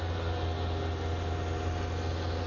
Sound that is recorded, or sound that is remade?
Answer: recorded